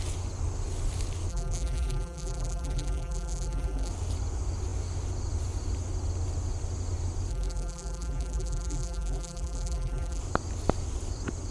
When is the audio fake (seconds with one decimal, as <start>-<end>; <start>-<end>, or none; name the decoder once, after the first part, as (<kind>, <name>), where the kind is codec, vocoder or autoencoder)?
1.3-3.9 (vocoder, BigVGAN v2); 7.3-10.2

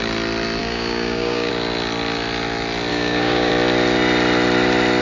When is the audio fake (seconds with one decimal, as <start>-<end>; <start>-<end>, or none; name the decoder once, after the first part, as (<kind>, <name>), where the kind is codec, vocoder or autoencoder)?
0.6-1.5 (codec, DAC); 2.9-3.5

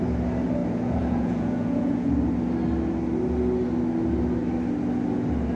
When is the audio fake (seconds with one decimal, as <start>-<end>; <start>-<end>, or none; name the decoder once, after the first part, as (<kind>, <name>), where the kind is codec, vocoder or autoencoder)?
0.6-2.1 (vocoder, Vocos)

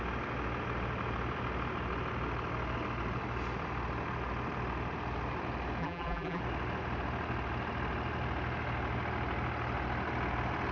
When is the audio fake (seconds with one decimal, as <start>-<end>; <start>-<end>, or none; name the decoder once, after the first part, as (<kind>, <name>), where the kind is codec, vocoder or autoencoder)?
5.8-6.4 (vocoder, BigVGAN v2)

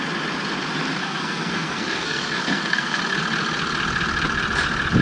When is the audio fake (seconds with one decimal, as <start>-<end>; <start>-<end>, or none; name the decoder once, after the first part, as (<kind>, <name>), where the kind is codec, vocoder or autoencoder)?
1.0-3.0 (codec, SNAC)

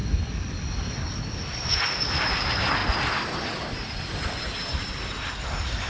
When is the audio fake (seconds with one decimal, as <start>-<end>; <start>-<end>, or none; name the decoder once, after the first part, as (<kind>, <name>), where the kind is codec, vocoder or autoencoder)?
none